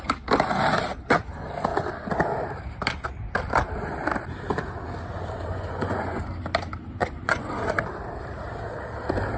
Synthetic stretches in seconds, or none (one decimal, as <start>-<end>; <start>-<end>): 5.5-6.2; 7.0-7.5